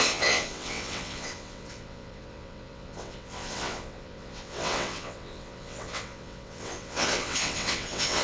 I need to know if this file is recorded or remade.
remade